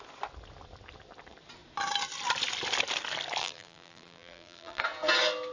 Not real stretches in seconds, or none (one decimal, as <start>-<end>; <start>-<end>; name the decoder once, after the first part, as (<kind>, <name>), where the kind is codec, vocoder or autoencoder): 3.4-4.8 (vocoder, BigVGAN v2)